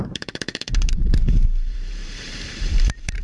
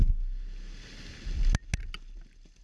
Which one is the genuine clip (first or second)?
second